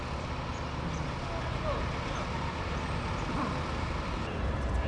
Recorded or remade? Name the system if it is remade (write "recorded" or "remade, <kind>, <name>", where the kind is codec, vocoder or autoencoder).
remade, vocoder, BigVGAN v2